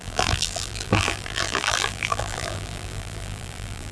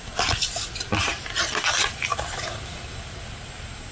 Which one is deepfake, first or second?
first